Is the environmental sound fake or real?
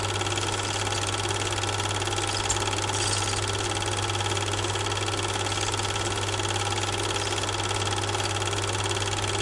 real